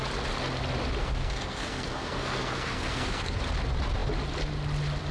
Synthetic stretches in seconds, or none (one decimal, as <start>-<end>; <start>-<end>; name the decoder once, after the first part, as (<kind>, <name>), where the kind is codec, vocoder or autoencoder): 1.0-3.4 (codec, SNAC)